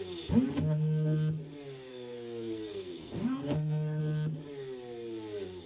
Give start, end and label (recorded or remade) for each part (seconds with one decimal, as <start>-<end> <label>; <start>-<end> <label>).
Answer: 0.0-1.9 recorded; 1.9-4.0 remade; 4.0-5.7 recorded